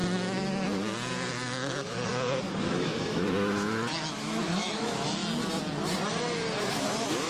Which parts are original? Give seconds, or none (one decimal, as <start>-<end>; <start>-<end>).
0.0-1.3; 2.1-2.7; 5.2-6.7